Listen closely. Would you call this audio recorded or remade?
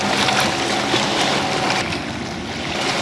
recorded